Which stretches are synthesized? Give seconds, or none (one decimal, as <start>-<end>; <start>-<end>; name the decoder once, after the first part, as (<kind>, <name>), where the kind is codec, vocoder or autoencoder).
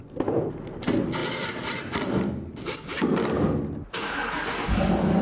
1.2-2.2 (vocoder, BigVGAN v2)